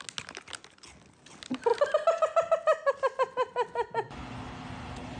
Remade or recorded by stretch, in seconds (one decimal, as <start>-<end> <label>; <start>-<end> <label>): 0.0-5.2 recorded